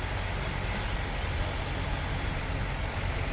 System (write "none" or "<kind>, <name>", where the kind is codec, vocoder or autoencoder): none